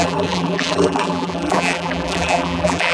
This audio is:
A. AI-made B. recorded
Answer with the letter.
A